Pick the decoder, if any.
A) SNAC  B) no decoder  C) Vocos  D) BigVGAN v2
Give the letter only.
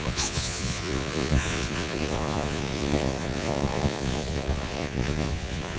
C